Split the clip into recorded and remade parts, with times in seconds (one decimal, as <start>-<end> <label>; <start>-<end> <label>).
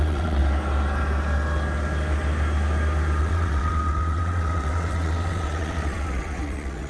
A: 0.0-0.4 remade; 0.4-3.2 recorded; 3.2-6.9 remade